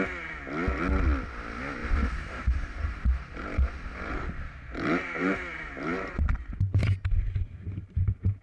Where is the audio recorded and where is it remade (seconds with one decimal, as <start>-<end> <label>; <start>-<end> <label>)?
0.0-1.8 recorded; 1.8-6.8 remade; 6.8-8.4 recorded